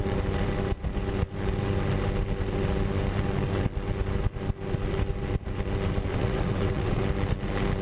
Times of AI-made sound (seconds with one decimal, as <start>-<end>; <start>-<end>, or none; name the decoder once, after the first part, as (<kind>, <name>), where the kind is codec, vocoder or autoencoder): 6.1-7.0 (vocoder, WaveNeXt)